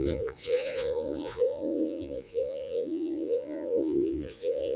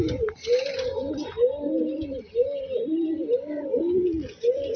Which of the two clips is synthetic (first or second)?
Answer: first